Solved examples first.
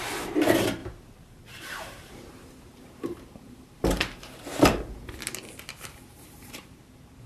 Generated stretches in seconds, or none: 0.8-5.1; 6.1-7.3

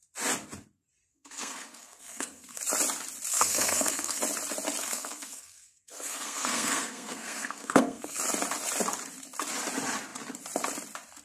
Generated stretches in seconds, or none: 1.1-2.6; 3.3-4.2; 4.8-8.2

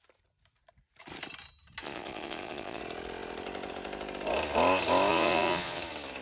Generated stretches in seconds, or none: 1.8-2.8; 5.1-5.8